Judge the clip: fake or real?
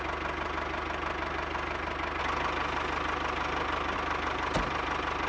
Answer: real